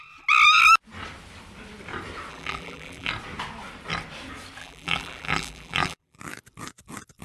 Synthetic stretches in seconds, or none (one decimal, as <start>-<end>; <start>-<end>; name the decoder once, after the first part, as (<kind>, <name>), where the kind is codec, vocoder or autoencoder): 2.3-3.1 (vocoder, BigVGAN v2); 4.6-6.2